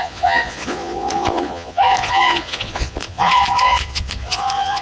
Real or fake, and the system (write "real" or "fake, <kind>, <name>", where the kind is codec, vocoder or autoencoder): fake, vocoder, Vocos